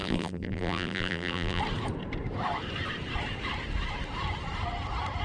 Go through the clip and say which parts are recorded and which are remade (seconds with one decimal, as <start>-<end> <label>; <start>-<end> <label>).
0.0-1.6 remade; 1.6-5.2 recorded